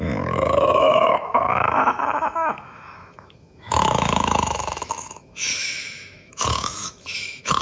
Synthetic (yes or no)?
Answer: yes